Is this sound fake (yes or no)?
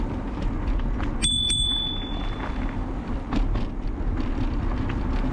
no